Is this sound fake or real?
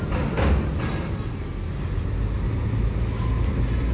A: real